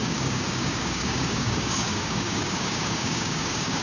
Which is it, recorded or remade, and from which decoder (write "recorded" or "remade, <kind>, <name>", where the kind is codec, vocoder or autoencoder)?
remade, codec, DAC